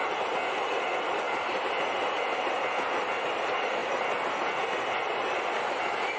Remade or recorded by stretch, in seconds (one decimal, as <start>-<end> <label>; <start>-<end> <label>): 0.0-6.2 recorded